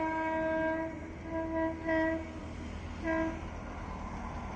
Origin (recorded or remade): recorded